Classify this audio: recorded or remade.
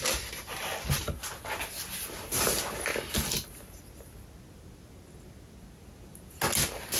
recorded